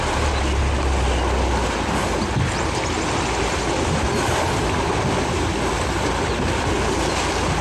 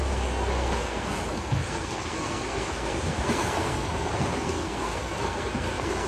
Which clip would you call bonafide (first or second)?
first